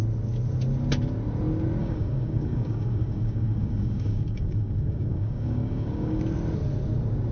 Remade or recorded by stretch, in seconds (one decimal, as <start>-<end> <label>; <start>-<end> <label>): 0.0-1.8 recorded; 1.8-6.2 remade; 6.2-7.3 recorded